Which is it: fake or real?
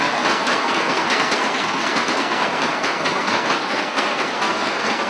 fake